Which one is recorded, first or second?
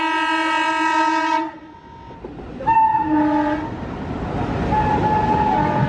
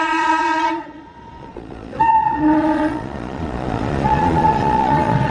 first